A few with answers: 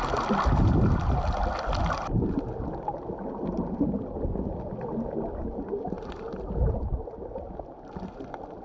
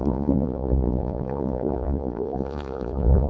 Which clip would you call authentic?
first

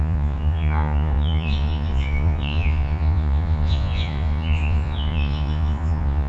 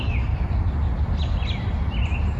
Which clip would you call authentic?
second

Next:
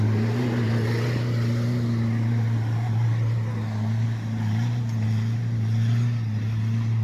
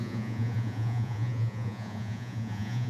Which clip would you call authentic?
first